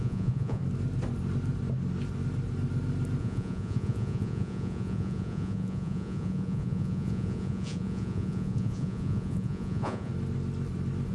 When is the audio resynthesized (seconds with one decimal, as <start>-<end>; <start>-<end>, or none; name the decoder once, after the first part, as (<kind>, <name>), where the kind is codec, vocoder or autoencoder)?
0.0-0.6 (vocoder, Vocos); 3.2-10.1